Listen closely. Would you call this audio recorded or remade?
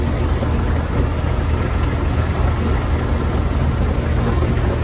recorded